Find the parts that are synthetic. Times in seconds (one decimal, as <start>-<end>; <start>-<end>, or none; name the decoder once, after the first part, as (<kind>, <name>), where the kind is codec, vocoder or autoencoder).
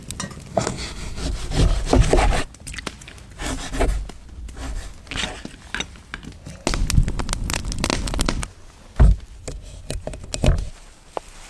0.5-1.2 (codec, SNAC)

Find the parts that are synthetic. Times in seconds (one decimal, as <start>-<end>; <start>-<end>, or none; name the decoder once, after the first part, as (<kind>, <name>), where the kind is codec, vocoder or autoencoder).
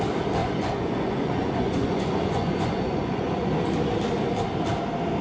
0.4-3.5 (vocoder, Vocos)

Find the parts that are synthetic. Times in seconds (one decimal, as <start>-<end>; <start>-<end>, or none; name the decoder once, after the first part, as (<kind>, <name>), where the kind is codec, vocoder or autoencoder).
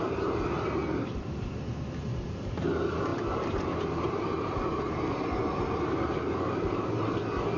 3.1-6.9 (vocoder, BigVGAN v2)